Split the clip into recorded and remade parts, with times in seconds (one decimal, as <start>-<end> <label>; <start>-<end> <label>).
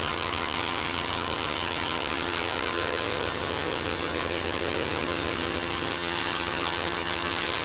0.0-7.6 remade